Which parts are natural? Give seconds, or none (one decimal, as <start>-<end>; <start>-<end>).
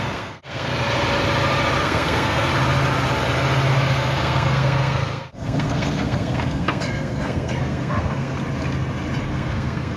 0.7-1.8; 2.5-3.7; 8.4-9.2